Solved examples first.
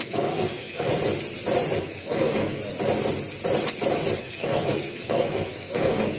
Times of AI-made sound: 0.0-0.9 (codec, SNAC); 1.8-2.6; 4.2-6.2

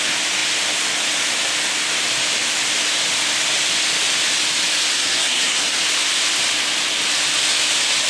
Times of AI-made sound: 4.9-5.8 (codec, SNAC)

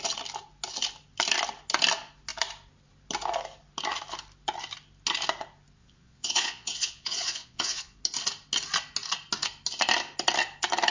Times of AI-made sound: 5.8-8.0 (vocoder, Vocos)

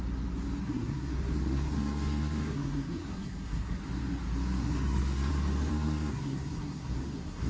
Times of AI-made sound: 0.6-3.8 (codec, SNAC); 4.6-5.3; 5.7-7.5